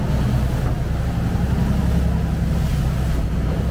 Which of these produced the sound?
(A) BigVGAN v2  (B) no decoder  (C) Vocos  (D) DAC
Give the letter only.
B